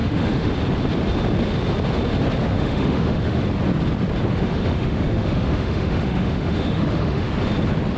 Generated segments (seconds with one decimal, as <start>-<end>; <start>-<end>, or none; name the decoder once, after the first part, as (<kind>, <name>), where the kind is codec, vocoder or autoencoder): 0.0-0.5 (autoencoder, DAC-VAE); 2.5-3.4; 4.3-7.3